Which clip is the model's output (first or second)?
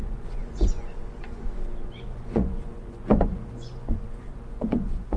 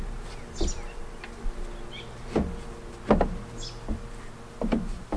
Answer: first